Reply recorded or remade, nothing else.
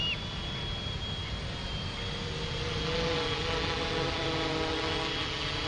recorded